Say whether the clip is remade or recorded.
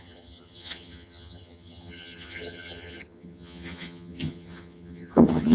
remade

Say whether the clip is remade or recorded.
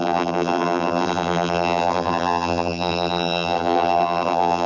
remade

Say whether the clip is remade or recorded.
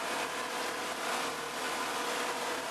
recorded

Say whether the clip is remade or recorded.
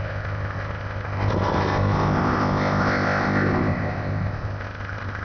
remade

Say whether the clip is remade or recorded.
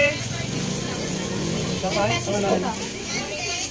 remade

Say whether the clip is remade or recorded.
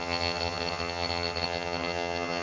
remade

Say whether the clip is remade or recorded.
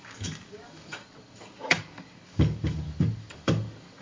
remade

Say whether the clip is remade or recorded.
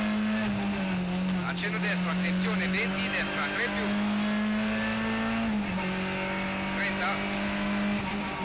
recorded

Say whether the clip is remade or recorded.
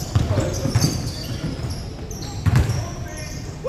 remade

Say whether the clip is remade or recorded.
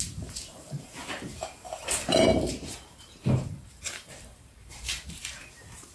remade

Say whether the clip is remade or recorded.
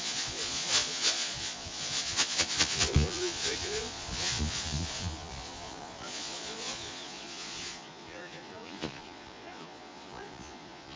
remade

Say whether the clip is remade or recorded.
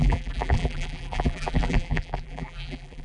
remade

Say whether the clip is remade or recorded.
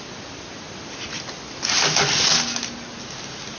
recorded